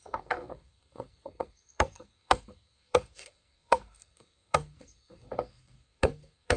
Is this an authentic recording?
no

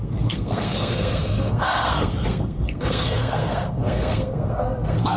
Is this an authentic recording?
no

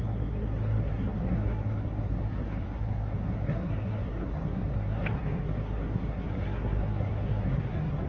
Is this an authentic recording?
no